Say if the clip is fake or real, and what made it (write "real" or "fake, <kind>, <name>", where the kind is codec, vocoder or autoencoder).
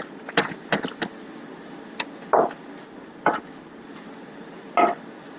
real